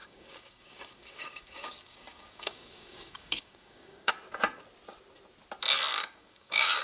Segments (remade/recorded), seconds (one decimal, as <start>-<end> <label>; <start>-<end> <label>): 0.0-4.1 remade; 4.1-5.9 recorded; 5.9-6.8 remade